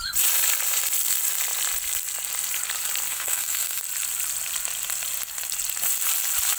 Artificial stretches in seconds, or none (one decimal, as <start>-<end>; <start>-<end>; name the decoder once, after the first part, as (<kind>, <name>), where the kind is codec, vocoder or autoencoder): 3.1-3.8 (codec, SNAC)